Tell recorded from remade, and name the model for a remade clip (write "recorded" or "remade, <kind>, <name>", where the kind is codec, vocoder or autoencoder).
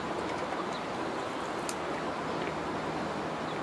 recorded